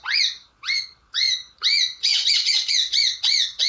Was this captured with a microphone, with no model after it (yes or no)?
no